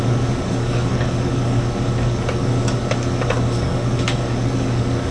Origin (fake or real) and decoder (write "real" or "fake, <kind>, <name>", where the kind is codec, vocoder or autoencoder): fake, codec, DAC